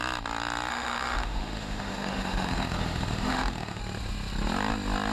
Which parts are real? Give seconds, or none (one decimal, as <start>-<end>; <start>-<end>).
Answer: 0.0-0.7; 3.8-5.1